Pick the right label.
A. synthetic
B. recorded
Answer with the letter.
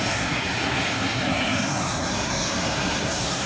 A